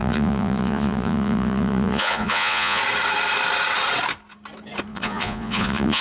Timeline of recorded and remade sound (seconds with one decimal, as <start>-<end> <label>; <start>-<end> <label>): 0.0-2.8 remade; 2.8-4.9 recorded; 4.9-6.0 remade